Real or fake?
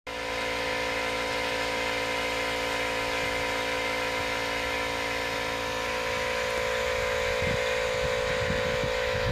real